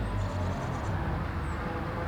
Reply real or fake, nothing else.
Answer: real